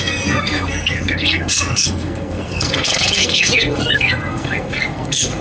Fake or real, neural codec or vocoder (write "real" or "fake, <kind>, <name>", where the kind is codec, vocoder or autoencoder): fake, codec, SNAC